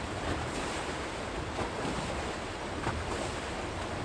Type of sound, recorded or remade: remade